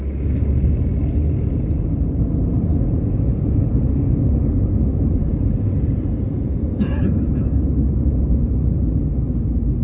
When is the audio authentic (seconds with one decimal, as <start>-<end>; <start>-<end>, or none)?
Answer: 0.0-2.7; 7.5-9.8